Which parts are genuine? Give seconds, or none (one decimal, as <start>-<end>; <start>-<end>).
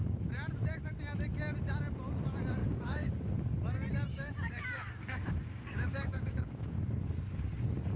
0.0-2.6; 3.1-4.1; 6.8-8.0